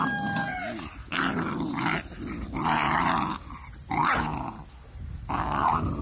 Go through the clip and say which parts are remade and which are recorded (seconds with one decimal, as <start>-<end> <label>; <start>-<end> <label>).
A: 0.0-6.0 recorded